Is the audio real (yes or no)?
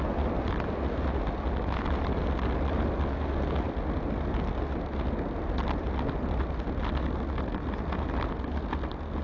yes